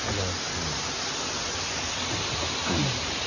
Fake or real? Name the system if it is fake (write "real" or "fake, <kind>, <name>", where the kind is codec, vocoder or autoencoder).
real